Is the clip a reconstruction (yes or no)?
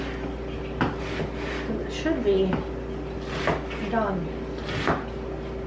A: no